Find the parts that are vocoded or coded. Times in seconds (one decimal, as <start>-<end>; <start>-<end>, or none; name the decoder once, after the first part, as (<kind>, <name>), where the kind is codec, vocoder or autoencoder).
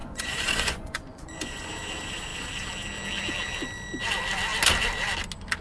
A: 0.0-1.7 (vocoder, Vocos)